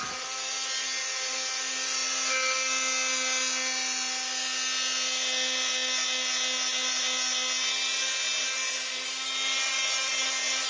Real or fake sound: real